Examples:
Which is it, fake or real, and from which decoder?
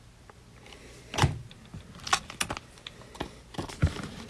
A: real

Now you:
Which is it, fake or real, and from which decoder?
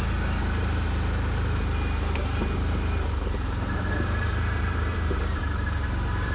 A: fake, vocoder, BigVGAN v2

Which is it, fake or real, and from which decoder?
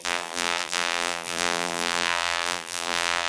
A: fake, vocoder, BigVGAN v2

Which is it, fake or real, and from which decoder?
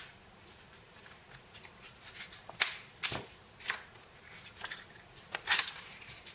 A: real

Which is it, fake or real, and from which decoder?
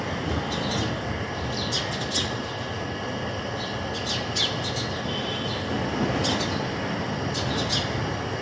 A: real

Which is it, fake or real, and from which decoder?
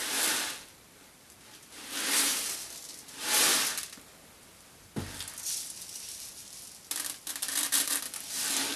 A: real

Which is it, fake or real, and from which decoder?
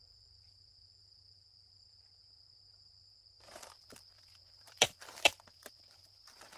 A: fake, vocoder, BigVGAN v2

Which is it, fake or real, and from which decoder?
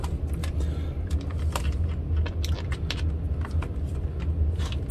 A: real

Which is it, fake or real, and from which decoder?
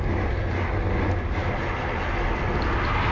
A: real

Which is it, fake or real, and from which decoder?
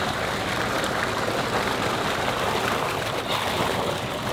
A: real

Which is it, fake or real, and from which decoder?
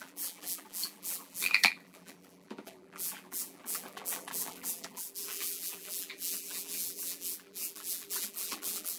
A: fake, vocoder, BigVGAN v2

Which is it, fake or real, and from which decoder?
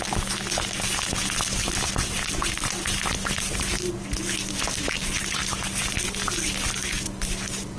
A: real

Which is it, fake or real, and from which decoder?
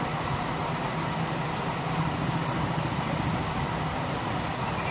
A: real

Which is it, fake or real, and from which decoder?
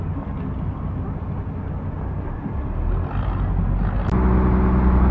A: real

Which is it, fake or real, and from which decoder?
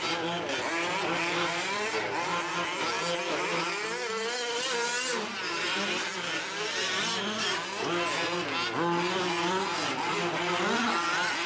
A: real